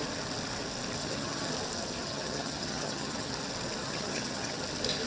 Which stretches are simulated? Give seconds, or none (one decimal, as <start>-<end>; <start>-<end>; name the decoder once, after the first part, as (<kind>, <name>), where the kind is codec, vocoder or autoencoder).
1.0-1.5 (vocoder, HiFi-GAN); 2.0-3.3; 3.8-4.6